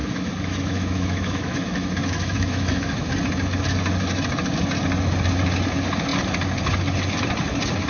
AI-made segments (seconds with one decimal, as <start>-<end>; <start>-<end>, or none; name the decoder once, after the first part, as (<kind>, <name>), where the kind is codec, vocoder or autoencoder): 0.0-3.1 (autoencoder, DAC-VAE)